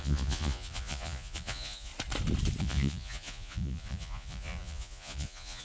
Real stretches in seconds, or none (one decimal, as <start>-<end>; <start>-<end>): 1.9-2.6